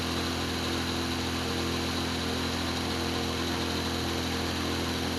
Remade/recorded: recorded